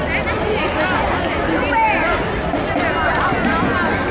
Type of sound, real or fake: real